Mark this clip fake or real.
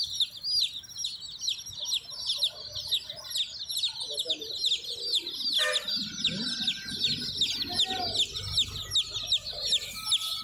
real